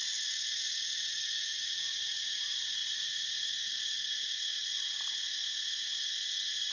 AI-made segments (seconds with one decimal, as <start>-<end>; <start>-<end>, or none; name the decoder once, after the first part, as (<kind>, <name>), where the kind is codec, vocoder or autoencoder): 2.8-3.5 (vocoder, BigVGAN v2)